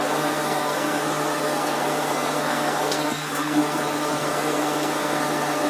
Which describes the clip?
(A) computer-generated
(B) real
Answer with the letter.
A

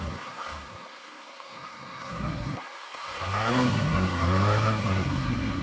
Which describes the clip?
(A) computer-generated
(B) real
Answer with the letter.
A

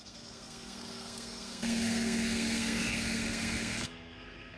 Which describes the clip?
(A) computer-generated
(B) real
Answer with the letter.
A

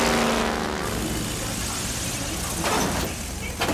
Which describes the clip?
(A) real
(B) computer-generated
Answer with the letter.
A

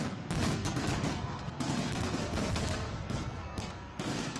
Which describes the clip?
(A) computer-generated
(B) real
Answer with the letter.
A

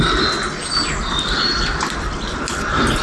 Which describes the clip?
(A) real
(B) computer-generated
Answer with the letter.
A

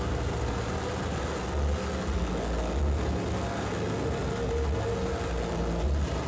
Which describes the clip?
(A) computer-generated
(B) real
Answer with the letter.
B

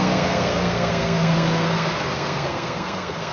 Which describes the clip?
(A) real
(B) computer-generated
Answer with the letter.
B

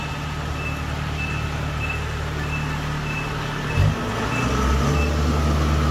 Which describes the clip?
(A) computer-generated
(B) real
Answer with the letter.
B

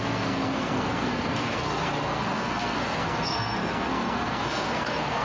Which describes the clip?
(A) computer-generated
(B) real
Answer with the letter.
A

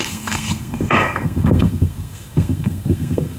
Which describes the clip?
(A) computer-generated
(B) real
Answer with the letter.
A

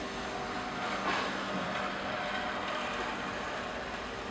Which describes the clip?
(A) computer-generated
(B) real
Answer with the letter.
B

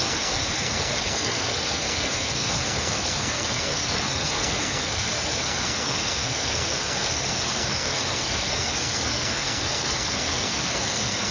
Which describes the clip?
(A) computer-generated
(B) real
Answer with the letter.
A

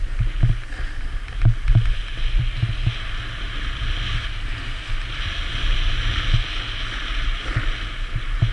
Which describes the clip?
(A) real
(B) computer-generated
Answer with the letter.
A